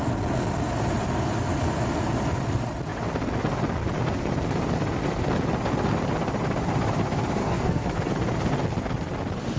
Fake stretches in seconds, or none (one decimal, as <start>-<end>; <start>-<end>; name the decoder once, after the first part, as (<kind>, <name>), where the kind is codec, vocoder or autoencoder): 7.4-8.1 (codec, SNAC)